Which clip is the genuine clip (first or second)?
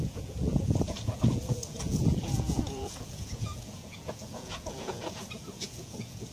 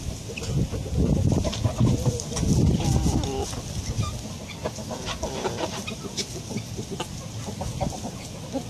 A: second